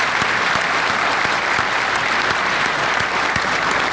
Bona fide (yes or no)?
yes